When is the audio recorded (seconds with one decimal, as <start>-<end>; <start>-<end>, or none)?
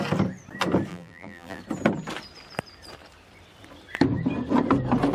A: 0.0-0.9; 1.6-5.1